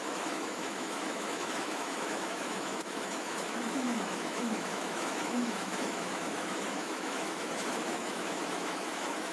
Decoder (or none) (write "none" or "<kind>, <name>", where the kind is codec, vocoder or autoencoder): autoencoder, DAC-VAE